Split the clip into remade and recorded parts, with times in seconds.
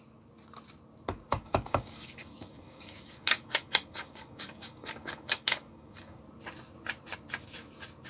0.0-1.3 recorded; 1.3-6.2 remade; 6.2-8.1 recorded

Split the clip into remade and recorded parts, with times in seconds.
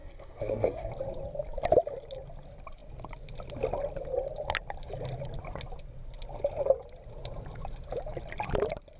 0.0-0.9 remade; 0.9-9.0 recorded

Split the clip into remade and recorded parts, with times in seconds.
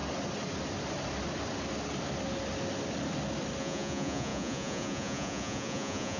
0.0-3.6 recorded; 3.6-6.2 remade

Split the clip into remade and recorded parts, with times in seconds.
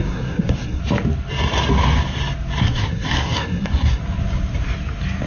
0.0-0.8 remade; 0.8-2.6 recorded; 2.6-4.0 remade; 4.0-5.3 recorded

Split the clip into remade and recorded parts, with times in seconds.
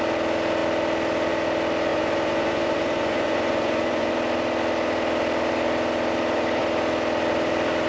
0.0-1.9 recorded; 1.9-4.1 remade; 4.1-7.9 recorded